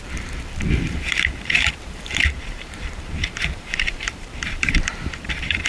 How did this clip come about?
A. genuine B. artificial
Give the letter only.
B